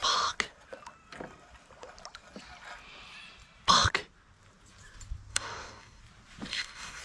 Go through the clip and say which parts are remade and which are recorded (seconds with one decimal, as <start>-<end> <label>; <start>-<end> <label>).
0.0-5.3 recorded; 5.3-6.0 remade; 6.0-6.5 recorded; 6.5-7.0 remade